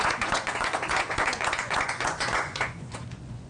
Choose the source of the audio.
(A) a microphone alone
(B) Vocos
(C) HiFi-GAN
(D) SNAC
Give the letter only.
B